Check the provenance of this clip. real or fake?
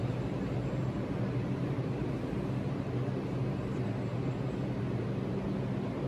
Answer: real